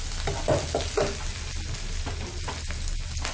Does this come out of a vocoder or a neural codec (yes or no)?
no